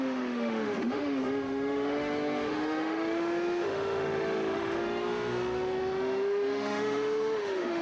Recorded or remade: remade